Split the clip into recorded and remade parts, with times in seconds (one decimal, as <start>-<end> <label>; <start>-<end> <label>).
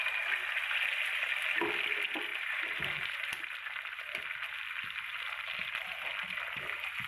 0.0-2.3 recorded; 2.3-3.3 remade; 3.3-7.1 recorded